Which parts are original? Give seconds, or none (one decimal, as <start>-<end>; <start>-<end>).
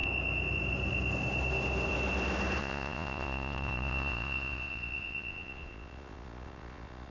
0.0-2.6